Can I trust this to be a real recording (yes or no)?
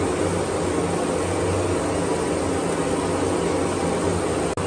yes